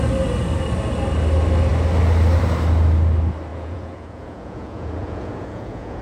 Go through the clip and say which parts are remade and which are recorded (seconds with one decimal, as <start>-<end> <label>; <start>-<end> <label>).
0.0-3.5 recorded; 3.5-6.0 remade